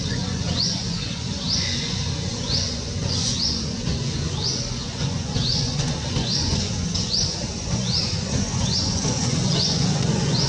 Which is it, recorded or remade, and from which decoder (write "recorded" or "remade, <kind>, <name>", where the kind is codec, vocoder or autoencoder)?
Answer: remade, vocoder, Vocos